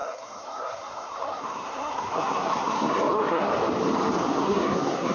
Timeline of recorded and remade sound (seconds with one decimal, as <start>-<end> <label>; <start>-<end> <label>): 0.0-3.5 remade; 3.5-4.2 recorded; 4.2-5.1 remade